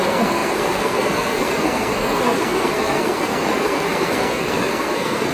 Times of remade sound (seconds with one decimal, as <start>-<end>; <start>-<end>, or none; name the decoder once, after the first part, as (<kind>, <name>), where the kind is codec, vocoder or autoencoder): 0.0-5.3 (codec, SNAC)